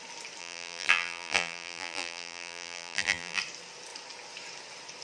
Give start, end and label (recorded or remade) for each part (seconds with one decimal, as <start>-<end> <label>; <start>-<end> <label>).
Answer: 0.0-0.4 recorded; 0.4-3.4 remade; 3.4-5.0 recorded